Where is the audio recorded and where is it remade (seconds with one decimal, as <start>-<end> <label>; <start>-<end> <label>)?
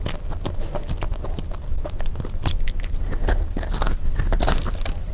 0.0-5.1 recorded